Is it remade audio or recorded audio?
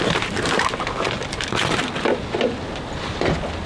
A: recorded